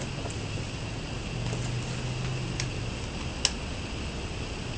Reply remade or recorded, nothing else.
recorded